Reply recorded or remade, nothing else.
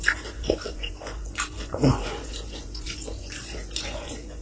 remade